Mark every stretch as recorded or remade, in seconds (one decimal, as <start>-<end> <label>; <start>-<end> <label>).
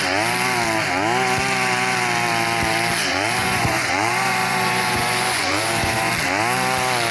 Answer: 0.0-3.1 recorded; 3.1-6.1 remade; 6.1-7.1 recorded